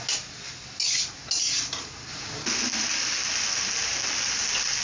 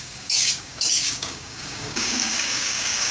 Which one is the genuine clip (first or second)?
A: first